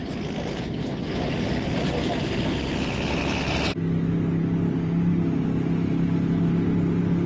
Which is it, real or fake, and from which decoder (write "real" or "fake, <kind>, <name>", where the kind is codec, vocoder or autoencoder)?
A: real